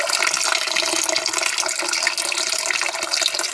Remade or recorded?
recorded